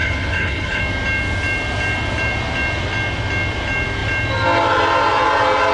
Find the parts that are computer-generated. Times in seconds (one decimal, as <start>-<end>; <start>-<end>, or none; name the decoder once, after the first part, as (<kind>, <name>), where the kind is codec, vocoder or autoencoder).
0.0-0.8 (codec, HILCodec)